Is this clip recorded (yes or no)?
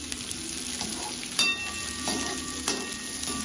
yes